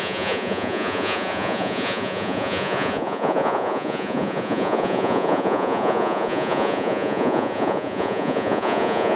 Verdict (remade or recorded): remade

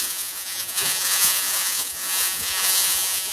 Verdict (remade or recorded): remade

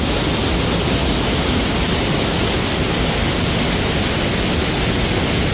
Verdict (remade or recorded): recorded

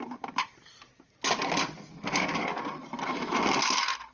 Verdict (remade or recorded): recorded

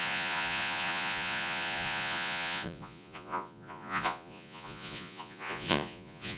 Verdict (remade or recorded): remade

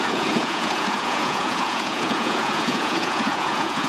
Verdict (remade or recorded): remade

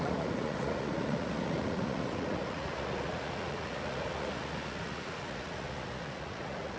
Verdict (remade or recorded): remade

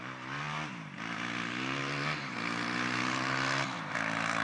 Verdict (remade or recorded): recorded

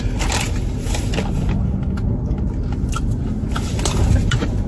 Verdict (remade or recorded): recorded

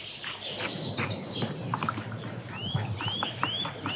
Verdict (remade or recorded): recorded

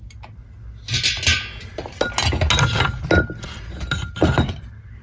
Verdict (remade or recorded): recorded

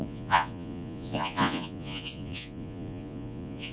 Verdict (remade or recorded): remade